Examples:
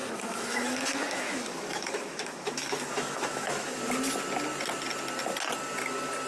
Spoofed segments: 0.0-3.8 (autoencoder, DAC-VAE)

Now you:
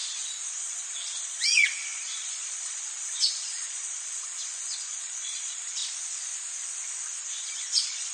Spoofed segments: 0.5-5.8 (vocoder, Vocos); 7.2-8.1